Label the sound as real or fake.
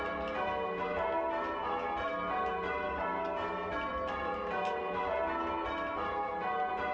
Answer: real